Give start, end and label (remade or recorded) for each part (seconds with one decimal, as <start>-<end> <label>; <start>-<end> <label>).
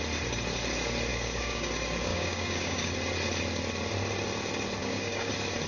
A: 0.0-1.1 recorded; 1.1-1.7 remade; 1.7-2.1 recorded; 2.1-2.9 remade; 2.9-4.8 recorded; 4.8-5.3 remade; 5.3-5.7 recorded